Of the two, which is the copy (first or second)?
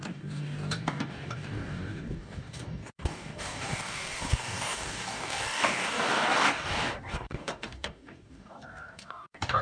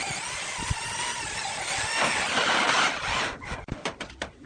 first